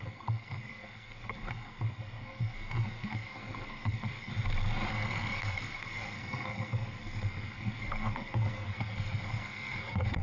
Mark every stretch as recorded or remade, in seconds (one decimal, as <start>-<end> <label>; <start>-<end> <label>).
0.0-4.3 remade; 4.3-4.9 recorded; 4.9-10.2 remade